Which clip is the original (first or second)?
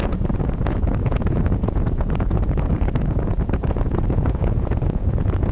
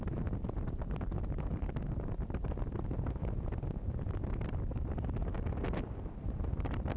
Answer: second